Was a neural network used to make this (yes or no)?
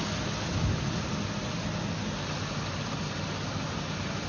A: no